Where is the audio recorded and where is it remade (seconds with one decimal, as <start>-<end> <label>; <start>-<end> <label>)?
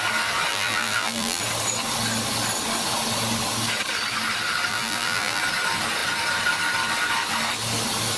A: 0.0-0.5 recorded; 0.5-1.4 remade; 1.4-4.7 recorded; 4.7-5.4 remade; 5.4-8.2 recorded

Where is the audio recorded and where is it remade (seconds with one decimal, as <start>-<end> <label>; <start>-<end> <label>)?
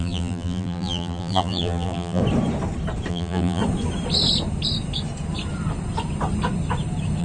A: 0.0-2.2 remade; 2.2-3.1 recorded; 3.1-3.6 remade; 3.6-7.2 recorded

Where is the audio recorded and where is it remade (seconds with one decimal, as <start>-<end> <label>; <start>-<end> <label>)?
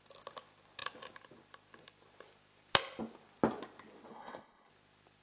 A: 0.0-4.1 recorded; 4.1-4.7 remade; 4.7-5.2 recorded